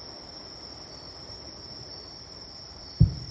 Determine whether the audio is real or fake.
real